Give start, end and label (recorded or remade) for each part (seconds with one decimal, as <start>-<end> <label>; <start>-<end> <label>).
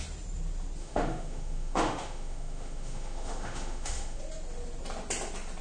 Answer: 0.0-0.8 recorded; 0.8-4.2 remade; 4.2-5.6 recorded